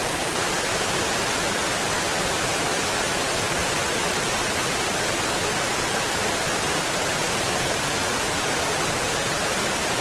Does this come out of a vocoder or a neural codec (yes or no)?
yes